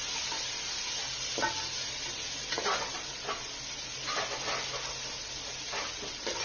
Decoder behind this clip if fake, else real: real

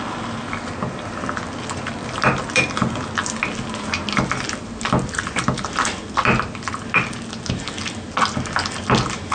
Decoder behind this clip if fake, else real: real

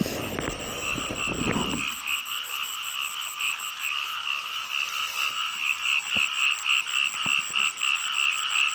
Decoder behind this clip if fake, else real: real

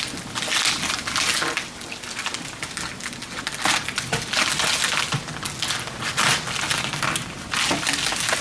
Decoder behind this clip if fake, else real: real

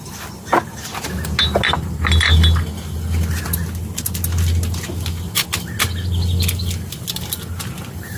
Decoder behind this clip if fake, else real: real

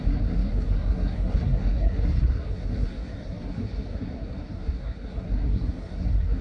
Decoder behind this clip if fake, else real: fake, codec, SNAC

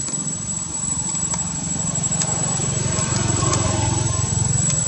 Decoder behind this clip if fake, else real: fake, vocoder, BigVGAN v2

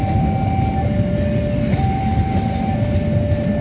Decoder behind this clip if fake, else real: real